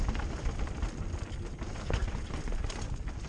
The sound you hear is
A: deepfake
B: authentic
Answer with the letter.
B